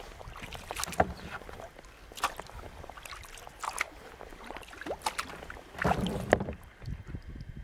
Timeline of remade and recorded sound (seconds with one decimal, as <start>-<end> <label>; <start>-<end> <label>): 0.0-7.6 recorded